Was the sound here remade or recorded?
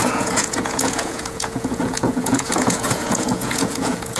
remade